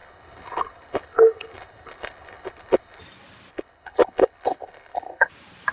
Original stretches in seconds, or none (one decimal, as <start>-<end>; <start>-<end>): 3.0-3.5; 5.3-5.7